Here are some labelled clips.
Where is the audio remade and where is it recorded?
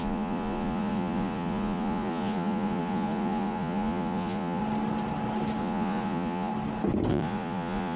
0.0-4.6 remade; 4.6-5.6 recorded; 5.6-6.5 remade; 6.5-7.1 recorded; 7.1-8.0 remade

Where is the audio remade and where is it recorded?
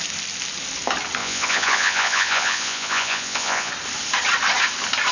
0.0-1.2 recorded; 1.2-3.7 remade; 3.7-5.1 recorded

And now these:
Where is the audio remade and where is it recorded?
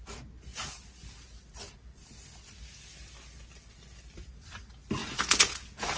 0.0-5.0 recorded; 5.0-6.0 remade